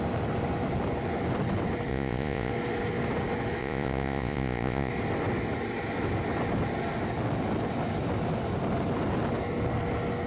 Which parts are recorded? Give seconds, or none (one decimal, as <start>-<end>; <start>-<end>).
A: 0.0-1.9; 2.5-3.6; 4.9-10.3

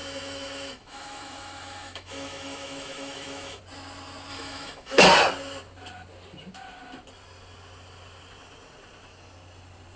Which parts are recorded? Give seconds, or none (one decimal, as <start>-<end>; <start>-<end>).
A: 3.6-4.3; 5.0-10.0

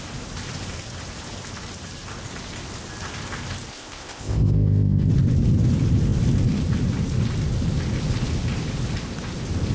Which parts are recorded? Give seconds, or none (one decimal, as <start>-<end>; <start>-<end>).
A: 0.0-3.7; 5.1-9.7